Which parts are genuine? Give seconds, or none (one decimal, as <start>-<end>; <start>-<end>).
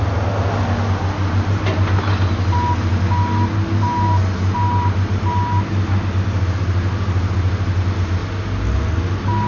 0.0-9.5